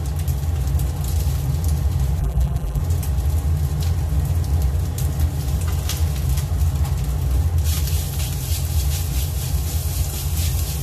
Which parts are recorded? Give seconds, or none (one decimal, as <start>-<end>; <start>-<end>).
0.0-2.2; 2.8-10.8